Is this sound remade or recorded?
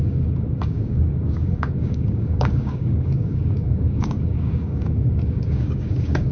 remade